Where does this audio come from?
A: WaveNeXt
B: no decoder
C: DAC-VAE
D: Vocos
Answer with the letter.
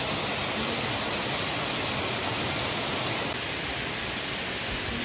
B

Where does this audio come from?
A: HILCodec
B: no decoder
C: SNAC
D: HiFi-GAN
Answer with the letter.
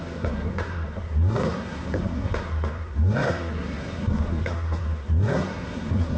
C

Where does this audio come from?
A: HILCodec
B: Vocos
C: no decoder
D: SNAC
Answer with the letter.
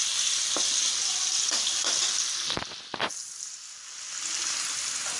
C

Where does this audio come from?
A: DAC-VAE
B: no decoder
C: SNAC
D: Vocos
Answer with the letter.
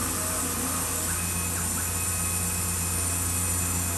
B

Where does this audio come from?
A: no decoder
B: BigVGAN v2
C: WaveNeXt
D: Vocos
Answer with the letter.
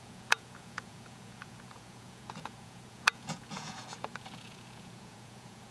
D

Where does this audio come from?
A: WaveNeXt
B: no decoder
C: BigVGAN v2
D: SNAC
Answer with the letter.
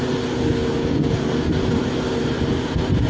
B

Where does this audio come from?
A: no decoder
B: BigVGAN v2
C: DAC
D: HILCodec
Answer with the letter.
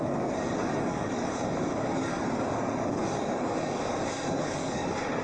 C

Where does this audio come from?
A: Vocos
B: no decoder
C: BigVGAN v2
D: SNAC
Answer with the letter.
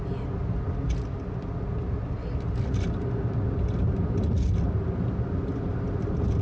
B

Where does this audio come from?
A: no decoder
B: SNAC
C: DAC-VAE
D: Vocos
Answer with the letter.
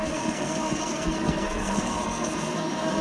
B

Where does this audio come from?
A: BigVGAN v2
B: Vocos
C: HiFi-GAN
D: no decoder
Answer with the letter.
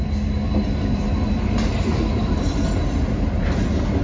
D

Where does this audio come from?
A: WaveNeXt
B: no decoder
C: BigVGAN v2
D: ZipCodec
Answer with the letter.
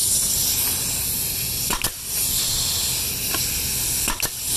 B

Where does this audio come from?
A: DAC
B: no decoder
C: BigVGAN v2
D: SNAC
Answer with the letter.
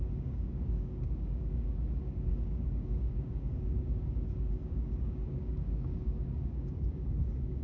A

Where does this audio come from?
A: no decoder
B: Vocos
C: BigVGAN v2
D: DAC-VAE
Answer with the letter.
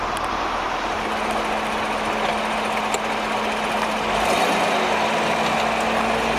A